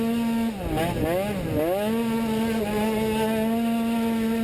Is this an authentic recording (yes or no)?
yes